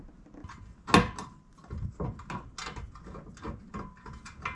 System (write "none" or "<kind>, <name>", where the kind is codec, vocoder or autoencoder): none